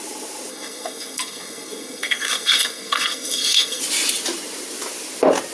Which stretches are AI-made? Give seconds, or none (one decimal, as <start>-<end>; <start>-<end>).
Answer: 0.5-3.8